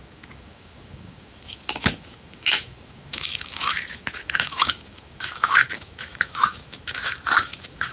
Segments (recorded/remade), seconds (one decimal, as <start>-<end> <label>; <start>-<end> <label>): 0.0-7.9 remade